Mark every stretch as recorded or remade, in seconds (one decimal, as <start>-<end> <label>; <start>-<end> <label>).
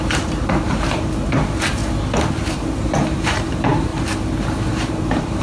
0.0-1.8 remade; 1.8-2.5 recorded; 2.5-3.9 remade; 3.9-4.9 recorded; 4.9-5.4 remade